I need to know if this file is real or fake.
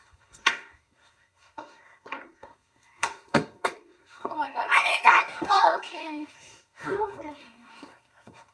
fake